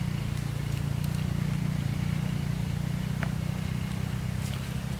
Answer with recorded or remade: recorded